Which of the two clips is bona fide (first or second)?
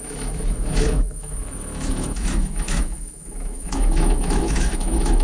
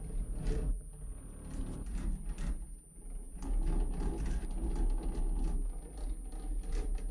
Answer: second